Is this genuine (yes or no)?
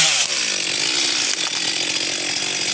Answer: yes